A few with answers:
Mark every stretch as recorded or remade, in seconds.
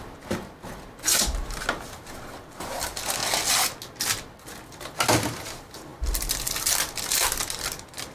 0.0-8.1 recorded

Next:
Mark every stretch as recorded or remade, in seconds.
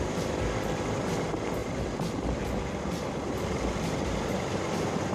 0.0-5.1 remade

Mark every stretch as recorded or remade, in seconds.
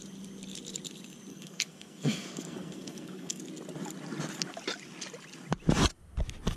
0.0-1.3 recorded; 1.3-3.4 remade; 3.4-6.6 recorded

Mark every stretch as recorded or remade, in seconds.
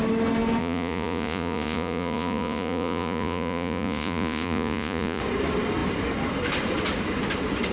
0.0-0.6 recorded; 0.6-5.2 remade; 5.2-7.7 recorded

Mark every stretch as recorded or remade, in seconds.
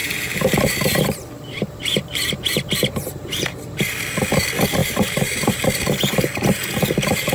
0.0-4.0 remade; 4.0-4.8 recorded; 4.8-5.6 remade; 5.6-7.3 recorded